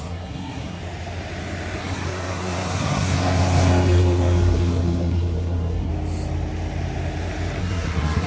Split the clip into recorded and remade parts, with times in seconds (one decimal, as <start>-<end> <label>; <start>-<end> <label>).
0.0-0.8 remade; 0.8-1.8 recorded; 1.8-5.9 remade; 5.9-7.6 recorded; 7.6-8.3 remade